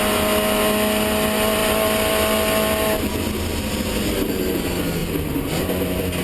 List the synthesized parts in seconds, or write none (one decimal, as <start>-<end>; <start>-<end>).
none